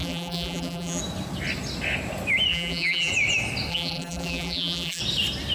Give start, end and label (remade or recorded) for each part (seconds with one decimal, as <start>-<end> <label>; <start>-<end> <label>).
0.0-1.0 remade; 1.0-2.5 recorded; 2.5-3.1 remade; 3.1-3.7 recorded; 3.7-5.0 remade; 5.0-5.5 recorded